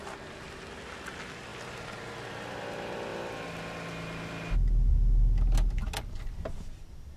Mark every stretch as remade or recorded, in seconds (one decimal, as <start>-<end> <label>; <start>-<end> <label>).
0.0-1.5 recorded; 1.5-2.2 remade; 2.2-7.2 recorded